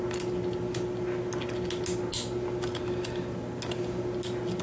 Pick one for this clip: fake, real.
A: real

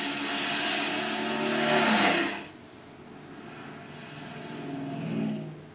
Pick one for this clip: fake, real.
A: real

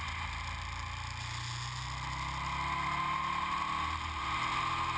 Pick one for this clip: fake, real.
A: real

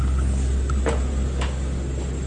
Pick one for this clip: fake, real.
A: real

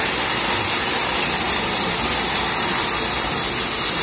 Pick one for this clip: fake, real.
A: fake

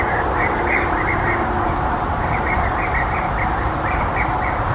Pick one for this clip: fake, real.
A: real